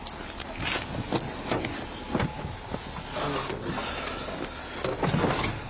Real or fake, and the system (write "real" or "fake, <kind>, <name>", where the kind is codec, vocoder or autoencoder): real